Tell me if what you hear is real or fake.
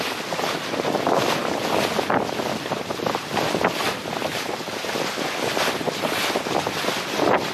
real